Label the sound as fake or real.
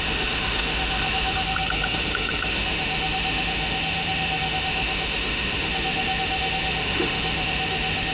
fake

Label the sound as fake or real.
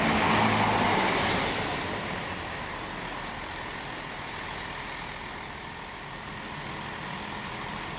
real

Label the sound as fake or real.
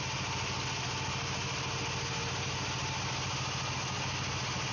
real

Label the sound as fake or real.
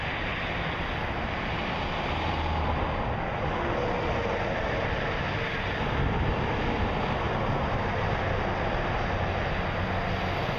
real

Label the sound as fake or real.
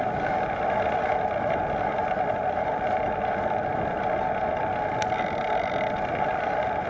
real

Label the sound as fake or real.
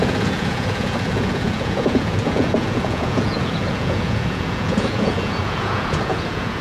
fake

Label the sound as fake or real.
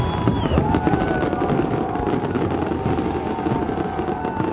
real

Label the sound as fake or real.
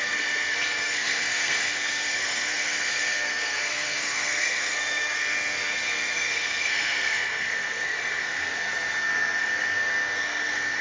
fake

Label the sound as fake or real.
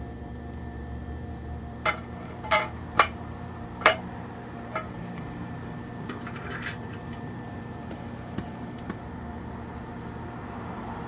fake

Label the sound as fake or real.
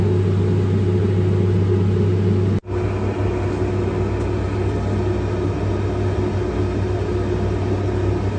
real